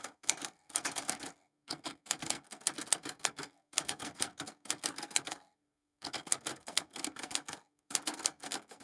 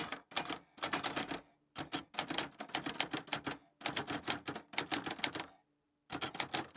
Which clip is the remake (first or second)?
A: first